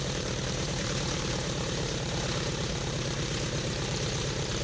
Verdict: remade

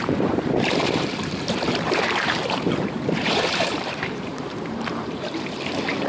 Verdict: remade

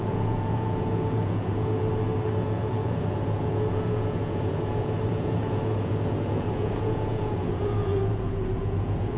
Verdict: remade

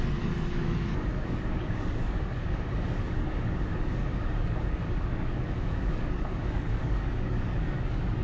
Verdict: remade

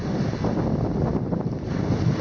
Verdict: recorded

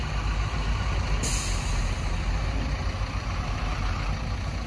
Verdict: recorded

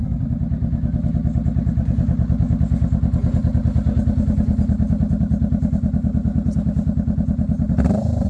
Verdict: recorded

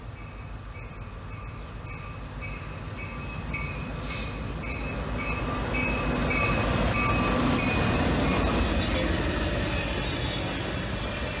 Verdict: recorded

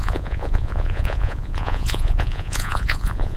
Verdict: remade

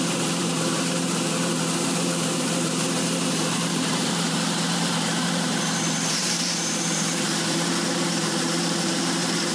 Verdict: remade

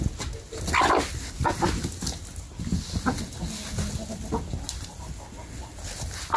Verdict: recorded